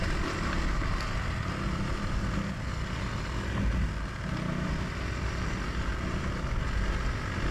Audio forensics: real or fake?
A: real